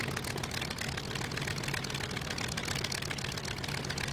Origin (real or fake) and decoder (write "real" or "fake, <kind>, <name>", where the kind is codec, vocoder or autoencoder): real